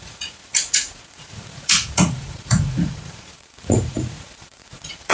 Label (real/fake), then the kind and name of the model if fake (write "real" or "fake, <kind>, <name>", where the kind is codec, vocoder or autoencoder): fake, vocoder, Vocos